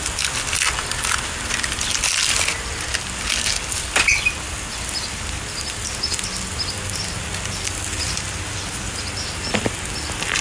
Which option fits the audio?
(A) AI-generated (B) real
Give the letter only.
B